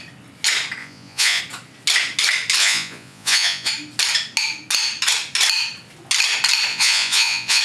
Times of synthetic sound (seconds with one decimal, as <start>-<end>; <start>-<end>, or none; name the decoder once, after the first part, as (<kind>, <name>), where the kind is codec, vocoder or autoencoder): 0.8-1.4 (vocoder, Vocos); 2.6-3.7; 6.7-7.6